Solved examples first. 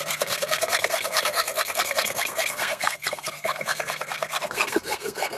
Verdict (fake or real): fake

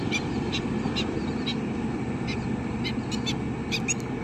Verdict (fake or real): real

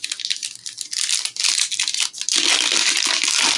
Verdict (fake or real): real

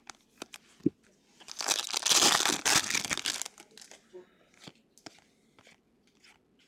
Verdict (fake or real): real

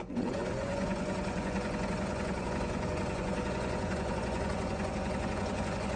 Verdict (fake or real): fake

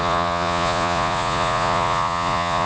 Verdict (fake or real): fake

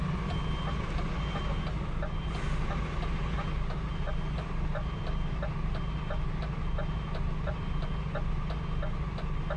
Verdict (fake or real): real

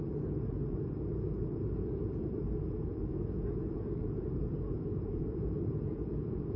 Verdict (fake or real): fake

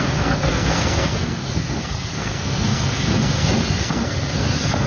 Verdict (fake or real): fake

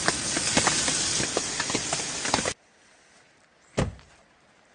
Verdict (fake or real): real